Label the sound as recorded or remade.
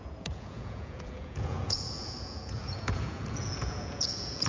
remade